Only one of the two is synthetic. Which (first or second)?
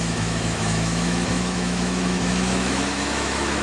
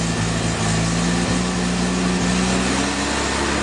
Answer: first